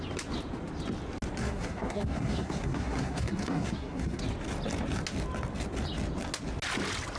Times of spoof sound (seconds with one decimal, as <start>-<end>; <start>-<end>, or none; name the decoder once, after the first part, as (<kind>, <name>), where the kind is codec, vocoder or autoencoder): 1.4-4.2 (codec, SNAC)

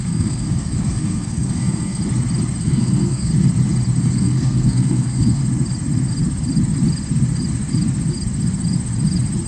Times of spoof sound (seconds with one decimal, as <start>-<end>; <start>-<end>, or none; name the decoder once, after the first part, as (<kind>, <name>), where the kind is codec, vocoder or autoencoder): 0.0-2.0 (codec, SNAC); 2.6-3.3; 4.0-5.4